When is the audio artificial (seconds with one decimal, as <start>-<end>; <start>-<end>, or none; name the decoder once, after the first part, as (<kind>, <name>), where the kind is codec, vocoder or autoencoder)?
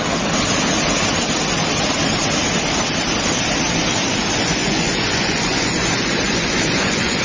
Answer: 4.4-7.2 (vocoder, Vocos)